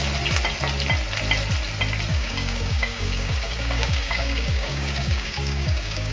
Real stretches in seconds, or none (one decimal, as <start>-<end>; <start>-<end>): 0.0-2.1